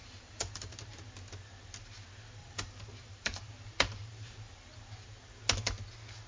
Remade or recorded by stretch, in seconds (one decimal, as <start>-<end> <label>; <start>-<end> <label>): 0.0-0.7 remade; 0.7-2.4 recorded; 2.4-4.8 remade; 4.8-6.3 recorded